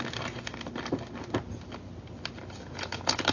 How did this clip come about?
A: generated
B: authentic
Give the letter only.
B